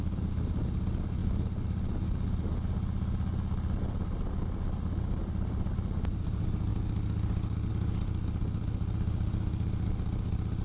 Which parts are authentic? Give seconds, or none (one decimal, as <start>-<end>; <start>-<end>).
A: 0.0-10.6